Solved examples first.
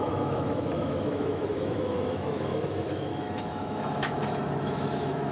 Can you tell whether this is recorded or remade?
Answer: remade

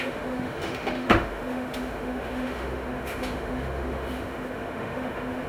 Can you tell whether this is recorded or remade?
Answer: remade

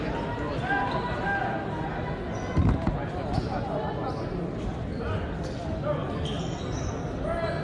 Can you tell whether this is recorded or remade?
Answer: recorded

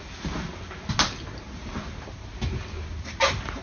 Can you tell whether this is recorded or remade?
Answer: recorded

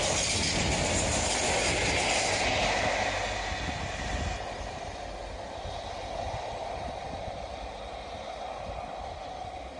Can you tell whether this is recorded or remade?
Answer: recorded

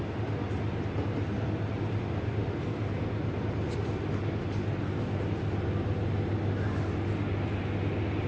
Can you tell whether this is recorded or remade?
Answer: recorded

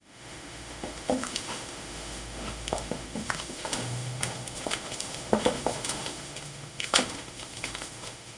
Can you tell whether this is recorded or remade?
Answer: remade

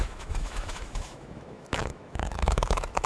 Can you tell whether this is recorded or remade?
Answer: remade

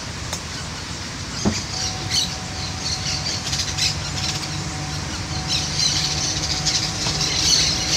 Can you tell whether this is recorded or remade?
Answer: recorded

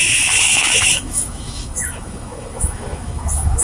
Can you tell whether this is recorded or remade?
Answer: remade